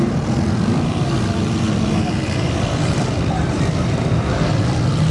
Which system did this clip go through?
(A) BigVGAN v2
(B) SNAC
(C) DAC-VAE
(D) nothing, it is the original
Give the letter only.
A